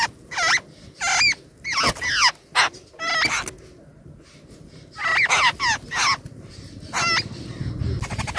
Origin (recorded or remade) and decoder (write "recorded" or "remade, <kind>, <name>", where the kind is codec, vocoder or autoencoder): recorded